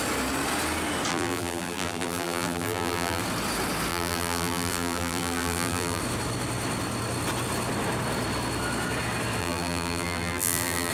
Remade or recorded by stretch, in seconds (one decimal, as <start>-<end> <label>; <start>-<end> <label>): 0.0-1.1 recorded; 1.1-3.2 remade; 3.2-3.9 recorded; 3.9-6.0 remade; 6.0-9.4 recorded; 9.4-10.9 remade